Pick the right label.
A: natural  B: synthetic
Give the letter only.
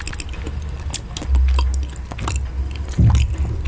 A